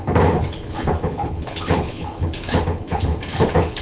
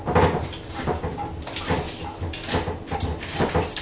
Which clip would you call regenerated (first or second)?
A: first